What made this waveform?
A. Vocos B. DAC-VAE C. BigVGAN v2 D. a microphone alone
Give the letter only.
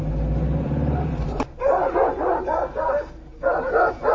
D